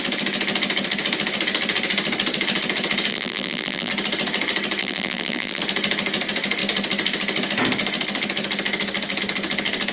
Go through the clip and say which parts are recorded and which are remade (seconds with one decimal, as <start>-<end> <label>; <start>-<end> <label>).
0.0-3.1 recorded; 3.1-3.9 remade; 3.9-4.8 recorded; 4.8-5.6 remade; 5.6-9.9 recorded